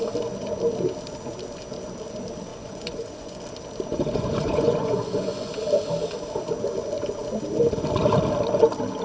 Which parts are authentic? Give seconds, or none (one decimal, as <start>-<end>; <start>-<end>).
0.0-2.5; 3.4-3.9; 5.5-9.0